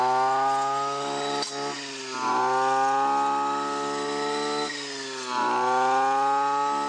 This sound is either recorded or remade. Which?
recorded